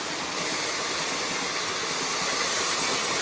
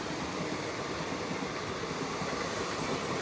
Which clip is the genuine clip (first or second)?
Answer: first